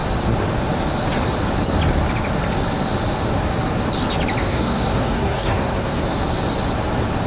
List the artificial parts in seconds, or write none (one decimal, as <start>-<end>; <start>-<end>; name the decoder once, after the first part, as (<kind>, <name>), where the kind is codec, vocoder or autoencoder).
4.4-6.0 (codec, SNAC)